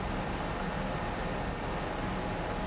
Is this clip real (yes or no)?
yes